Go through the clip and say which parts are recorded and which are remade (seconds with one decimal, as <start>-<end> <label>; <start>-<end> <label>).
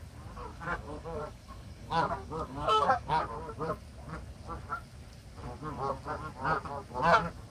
0.0-0.5 recorded; 0.5-3.2 remade; 3.2-7.5 recorded